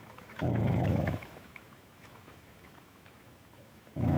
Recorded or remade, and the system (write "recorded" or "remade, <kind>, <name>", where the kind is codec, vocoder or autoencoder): remade, autoencoder, DAC-VAE